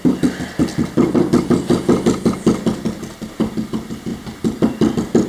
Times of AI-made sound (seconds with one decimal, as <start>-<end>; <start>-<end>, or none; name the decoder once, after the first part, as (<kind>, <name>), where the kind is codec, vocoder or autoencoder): none